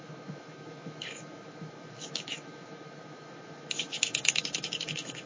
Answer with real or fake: fake